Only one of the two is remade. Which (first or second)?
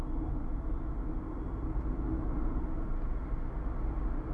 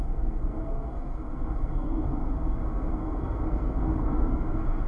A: second